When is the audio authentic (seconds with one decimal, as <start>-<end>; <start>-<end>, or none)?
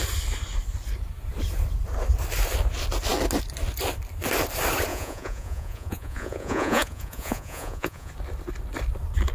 0.0-4.9; 8.1-9.3